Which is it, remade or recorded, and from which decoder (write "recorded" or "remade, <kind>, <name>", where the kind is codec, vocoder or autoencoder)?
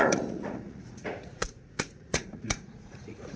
remade, vocoder, Vocos